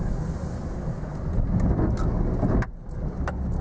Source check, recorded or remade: recorded